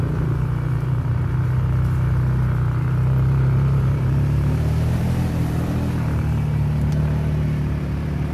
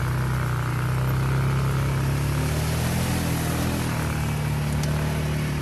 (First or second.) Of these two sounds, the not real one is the first